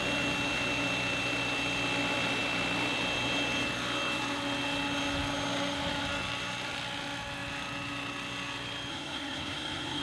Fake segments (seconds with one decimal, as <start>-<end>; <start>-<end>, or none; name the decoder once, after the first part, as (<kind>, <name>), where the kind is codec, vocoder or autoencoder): 8.9-10.0 (codec, SNAC)